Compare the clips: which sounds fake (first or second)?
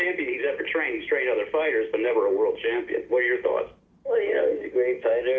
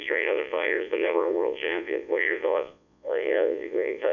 second